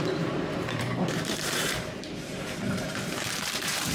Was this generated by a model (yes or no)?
yes